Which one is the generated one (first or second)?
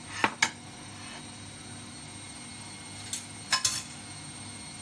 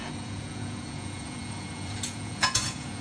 second